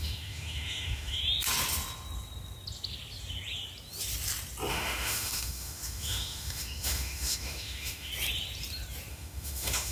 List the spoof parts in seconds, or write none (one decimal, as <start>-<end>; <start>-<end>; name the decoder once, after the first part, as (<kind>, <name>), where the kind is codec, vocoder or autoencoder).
0.0-1.2 (autoencoder, DAC-VAE); 4.7-8.1; 9.1-9.9